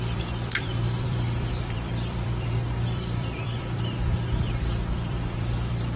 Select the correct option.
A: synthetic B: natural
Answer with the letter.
A